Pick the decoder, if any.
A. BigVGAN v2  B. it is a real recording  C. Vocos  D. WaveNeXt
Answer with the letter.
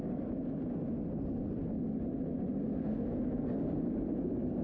B